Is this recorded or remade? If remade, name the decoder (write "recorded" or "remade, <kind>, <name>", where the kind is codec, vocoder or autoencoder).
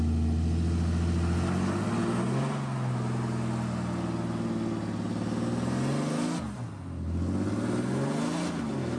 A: recorded